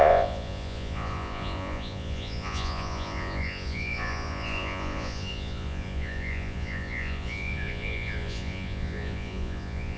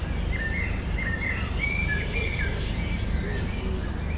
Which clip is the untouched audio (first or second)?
second